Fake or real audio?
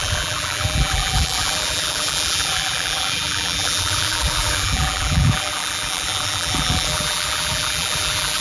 fake